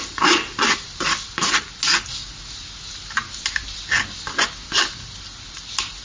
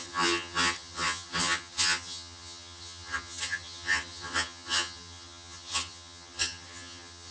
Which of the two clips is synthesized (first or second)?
second